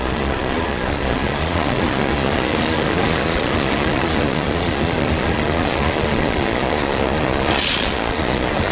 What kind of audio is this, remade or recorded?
remade